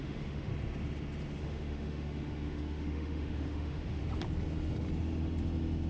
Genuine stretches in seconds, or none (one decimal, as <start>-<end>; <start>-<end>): 0.5-1.4; 4.0-5.9